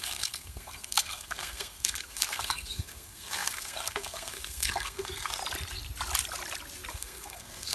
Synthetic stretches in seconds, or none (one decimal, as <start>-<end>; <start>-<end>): 0.0-5.4; 6.9-7.7